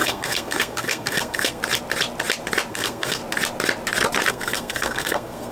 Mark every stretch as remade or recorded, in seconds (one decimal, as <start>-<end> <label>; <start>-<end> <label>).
0.0-1.6 remade; 1.6-2.7 recorded; 2.7-3.2 remade; 3.2-4.3 recorded; 4.3-5.5 remade